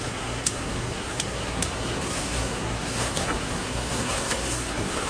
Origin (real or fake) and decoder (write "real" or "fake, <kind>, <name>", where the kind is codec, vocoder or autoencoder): fake, codec, SNAC